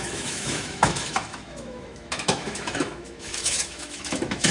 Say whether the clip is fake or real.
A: fake